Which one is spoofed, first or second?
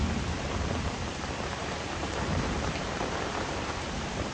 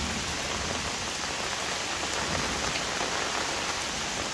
first